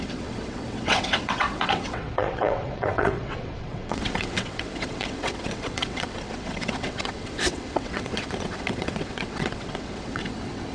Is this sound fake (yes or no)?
yes